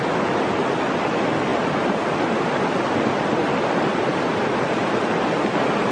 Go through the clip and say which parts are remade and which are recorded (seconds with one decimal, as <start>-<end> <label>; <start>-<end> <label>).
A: 0.0-5.9 recorded